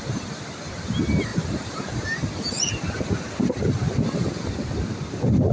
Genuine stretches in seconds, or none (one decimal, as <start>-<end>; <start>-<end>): 0.0-1.3; 2.7-5.5